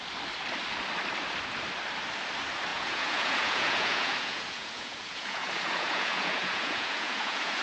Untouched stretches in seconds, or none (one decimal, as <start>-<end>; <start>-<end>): 0.0-2.7